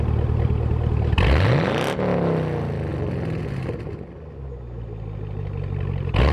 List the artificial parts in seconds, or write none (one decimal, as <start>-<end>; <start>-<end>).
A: none